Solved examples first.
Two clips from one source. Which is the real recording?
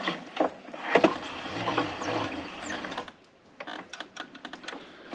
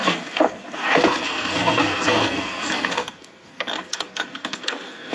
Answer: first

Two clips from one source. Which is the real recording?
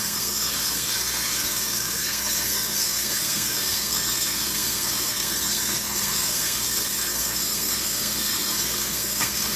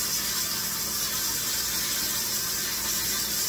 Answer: second